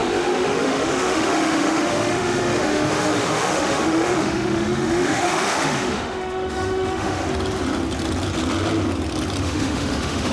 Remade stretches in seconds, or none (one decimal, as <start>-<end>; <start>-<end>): 0.0-7.2; 9.4-10.3